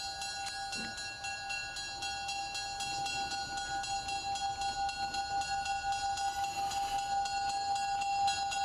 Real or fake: real